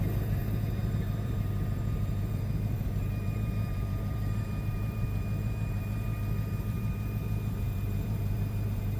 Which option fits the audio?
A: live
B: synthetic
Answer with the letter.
B